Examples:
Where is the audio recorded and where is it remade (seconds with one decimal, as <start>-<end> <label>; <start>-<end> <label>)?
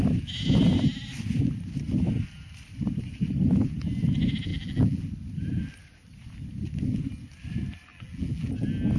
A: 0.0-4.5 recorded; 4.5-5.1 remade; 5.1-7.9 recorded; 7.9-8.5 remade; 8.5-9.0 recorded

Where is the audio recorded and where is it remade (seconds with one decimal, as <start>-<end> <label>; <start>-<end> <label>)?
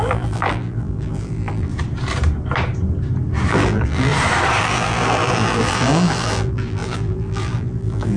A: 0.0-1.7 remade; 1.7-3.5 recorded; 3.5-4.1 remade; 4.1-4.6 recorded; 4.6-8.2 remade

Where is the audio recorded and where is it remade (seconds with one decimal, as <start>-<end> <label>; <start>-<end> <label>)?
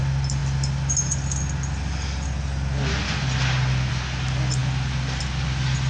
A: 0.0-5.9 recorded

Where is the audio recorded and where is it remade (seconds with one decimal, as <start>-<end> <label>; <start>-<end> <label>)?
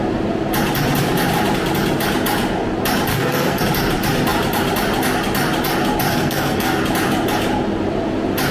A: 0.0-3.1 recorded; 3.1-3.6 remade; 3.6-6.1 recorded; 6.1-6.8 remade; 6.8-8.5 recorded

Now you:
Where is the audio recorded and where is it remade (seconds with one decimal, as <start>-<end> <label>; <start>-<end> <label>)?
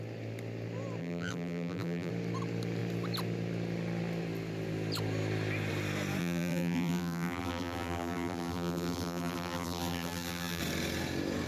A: 0.0-1.0 recorded; 1.0-2.1 remade; 2.1-6.2 recorded; 6.2-10.6 remade; 10.6-11.5 recorded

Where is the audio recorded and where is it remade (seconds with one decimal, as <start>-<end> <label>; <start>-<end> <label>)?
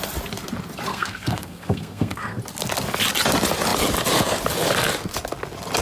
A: 0.0-0.9 recorded; 0.9-2.4 remade; 2.4-5.8 recorded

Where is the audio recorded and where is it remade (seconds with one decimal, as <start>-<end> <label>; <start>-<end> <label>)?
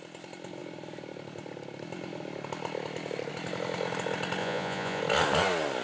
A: 0.0-4.4 recorded; 4.4-5.0 remade; 5.0-5.8 recorded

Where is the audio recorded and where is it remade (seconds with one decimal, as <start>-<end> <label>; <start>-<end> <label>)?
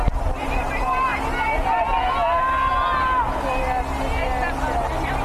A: 0.0-5.2 recorded